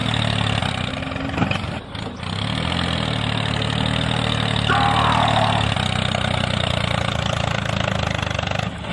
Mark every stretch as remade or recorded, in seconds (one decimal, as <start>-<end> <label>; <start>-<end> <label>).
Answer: 0.0-8.9 recorded